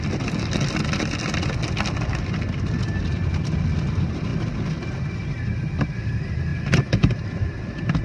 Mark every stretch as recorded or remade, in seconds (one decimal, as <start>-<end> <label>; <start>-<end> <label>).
0.0-8.0 recorded